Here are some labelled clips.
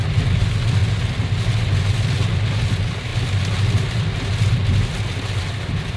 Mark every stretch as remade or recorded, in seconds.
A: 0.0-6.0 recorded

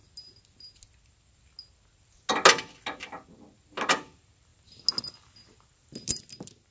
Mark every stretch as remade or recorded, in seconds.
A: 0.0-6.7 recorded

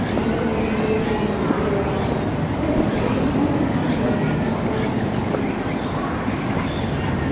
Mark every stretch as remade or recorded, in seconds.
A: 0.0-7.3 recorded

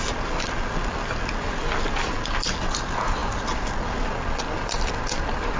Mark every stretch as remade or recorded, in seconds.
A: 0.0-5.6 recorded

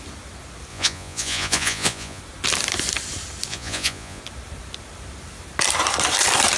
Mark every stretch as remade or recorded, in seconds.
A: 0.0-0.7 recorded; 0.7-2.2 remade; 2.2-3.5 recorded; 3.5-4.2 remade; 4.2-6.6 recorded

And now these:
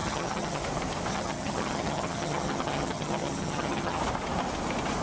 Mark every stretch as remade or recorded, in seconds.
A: 0.0-0.6 remade; 0.6-1.1 recorded; 1.1-4.0 remade; 4.0-5.0 recorded

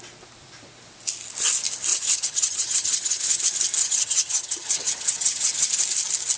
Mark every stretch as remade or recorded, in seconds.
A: 0.0-1.9 recorded; 1.9-3.4 remade; 3.4-3.8 recorded; 3.8-5.7 remade; 5.7-6.4 recorded

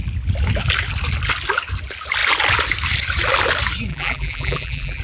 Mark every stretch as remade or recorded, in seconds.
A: 0.0-3.9 recorded; 3.9-5.0 remade